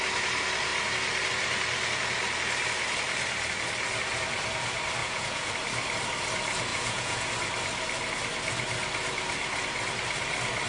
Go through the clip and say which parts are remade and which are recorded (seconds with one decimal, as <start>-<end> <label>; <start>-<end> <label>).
0.0-5.0 recorded; 5.0-5.5 remade; 5.5-6.7 recorded; 6.7-7.3 remade; 7.3-10.7 recorded